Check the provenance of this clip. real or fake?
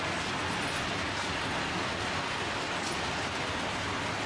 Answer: real